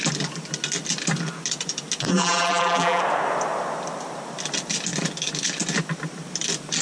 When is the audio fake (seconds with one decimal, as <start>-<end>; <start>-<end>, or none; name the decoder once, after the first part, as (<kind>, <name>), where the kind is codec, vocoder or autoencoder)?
2.1-3.0 (vocoder, BigVGAN v2)